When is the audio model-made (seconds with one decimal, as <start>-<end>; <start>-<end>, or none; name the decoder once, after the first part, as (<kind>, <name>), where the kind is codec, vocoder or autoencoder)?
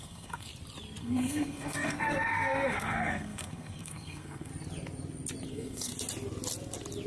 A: 0.0-0.5 (codec, SNAC); 1.0-4.5; 5.5-5.9